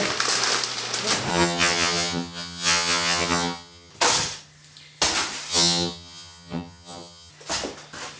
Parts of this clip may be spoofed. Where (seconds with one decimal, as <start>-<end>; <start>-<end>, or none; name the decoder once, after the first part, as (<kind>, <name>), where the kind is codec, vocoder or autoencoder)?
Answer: 1.3-3.9 (vocoder, HiFi-GAN); 5.5-7.3